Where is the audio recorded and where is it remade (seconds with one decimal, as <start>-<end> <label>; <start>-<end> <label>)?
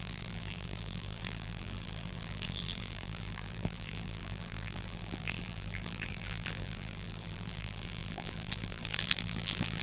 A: 0.0-9.8 remade